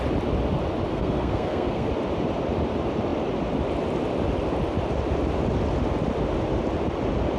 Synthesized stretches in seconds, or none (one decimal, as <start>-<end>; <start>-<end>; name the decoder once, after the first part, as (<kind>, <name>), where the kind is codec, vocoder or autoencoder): 0.9-1.9 (codec, SNAC)